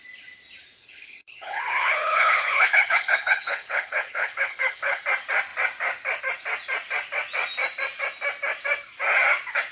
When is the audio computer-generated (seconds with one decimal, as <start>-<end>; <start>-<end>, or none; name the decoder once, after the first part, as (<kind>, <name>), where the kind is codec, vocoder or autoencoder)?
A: 0.8-5.0 (codec, HILCodec)